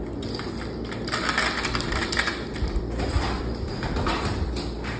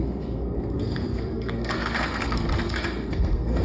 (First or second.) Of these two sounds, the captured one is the first